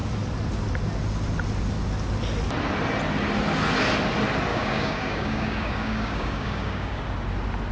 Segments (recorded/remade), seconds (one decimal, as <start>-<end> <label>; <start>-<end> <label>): 0.0-4.5 recorded; 4.5-7.0 remade; 7.0-7.7 recorded